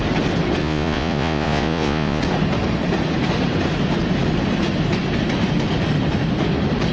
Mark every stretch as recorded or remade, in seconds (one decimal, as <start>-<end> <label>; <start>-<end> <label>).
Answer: 0.0-0.6 recorded; 0.6-2.2 remade; 2.2-6.9 recorded